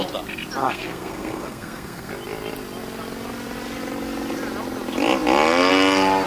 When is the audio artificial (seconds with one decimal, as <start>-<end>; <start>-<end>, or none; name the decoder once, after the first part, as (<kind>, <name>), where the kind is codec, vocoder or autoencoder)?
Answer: 0.6-2.1 (codec, SNAC)

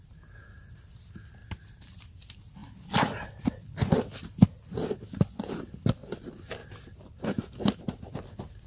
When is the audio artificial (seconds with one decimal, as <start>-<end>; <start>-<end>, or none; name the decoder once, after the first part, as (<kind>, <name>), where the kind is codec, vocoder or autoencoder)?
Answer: none

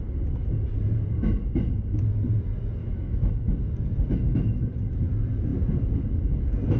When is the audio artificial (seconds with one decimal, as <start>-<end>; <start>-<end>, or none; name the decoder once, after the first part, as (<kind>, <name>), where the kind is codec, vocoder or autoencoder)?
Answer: 2.8-3.3 (autoencoder, DAC-VAE); 4.1-4.7

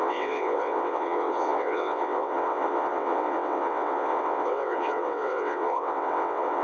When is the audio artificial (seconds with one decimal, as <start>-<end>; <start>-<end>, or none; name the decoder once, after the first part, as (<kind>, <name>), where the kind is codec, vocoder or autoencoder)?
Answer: 0.0-6.6 (vocoder, WaveNeXt)